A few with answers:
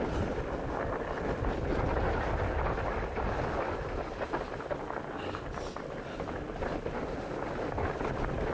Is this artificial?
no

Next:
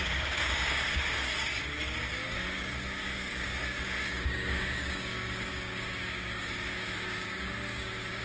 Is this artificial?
yes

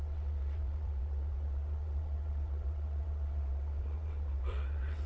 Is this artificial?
yes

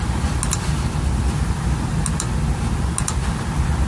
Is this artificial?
no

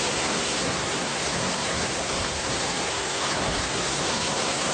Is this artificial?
yes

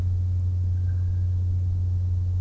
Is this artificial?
no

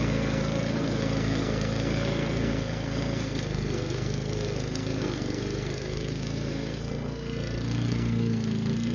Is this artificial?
yes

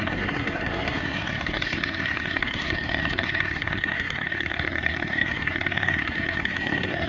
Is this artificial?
yes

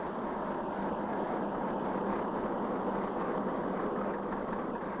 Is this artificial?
no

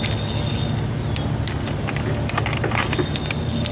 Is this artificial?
no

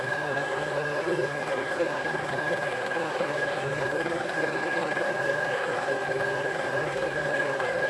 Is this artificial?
yes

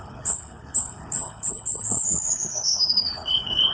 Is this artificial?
yes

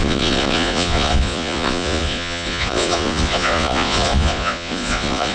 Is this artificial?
yes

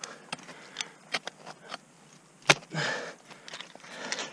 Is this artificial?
no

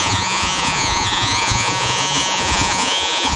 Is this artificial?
yes